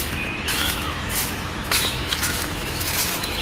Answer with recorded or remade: remade